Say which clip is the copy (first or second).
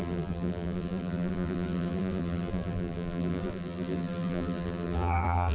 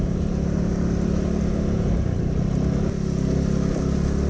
first